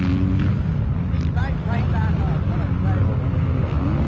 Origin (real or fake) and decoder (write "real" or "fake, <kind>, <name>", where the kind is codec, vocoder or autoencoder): real